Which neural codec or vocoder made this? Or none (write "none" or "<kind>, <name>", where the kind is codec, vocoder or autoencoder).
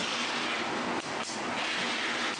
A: none